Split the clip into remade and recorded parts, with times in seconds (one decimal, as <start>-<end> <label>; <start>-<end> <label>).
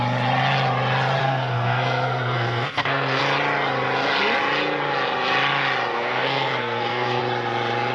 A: 0.0-1.2 recorded; 1.2-3.2 remade; 3.2-5.9 recorded; 5.9-7.2 remade; 7.2-7.9 recorded